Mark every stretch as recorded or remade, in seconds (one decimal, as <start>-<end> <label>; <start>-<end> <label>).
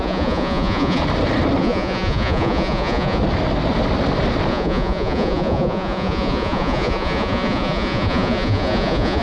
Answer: 0.0-1.0 remade; 1.0-1.6 recorded; 1.6-3.2 remade; 3.2-4.5 recorded; 4.5-9.2 remade